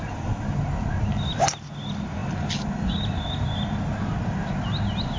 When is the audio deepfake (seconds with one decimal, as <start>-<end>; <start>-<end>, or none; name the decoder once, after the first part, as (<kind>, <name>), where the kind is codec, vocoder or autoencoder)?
none